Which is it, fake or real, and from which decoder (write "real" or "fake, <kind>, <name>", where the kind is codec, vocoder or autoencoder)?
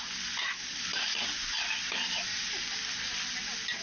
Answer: real